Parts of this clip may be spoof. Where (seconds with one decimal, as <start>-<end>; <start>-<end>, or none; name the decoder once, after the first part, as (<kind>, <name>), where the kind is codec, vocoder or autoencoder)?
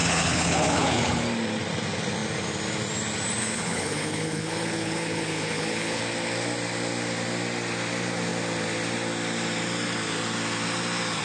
0.0-1.2 (codec, HILCodec); 3.4-6.0